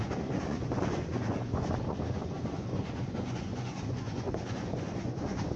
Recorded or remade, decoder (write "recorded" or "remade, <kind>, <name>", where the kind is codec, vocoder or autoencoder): remade, vocoder, Vocos